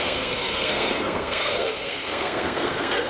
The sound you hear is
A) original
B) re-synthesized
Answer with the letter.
B